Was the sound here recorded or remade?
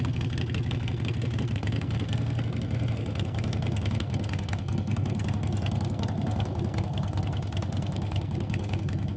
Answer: remade